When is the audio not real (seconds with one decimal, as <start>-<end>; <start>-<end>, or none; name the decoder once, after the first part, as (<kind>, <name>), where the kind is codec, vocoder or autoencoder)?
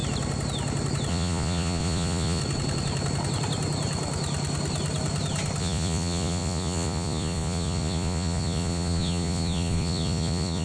1.1-2.4 (vocoder, Vocos); 5.6-10.6